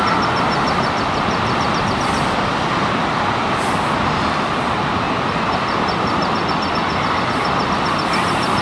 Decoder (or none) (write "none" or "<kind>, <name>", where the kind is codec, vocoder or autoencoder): none